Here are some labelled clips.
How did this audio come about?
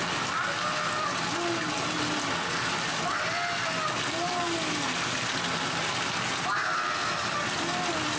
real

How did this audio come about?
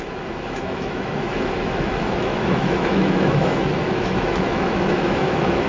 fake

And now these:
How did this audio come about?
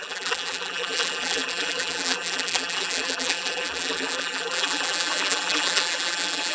fake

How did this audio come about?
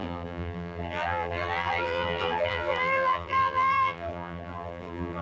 fake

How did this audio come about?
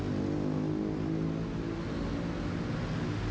real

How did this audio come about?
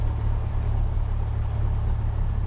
real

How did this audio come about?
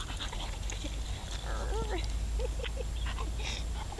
real